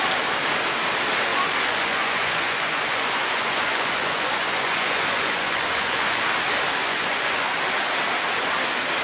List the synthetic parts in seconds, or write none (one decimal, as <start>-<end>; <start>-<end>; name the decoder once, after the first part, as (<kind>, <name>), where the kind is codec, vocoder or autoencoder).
1.3-6.2 (vocoder, Vocos); 6.8-7.6